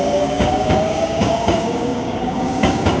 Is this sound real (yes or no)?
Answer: no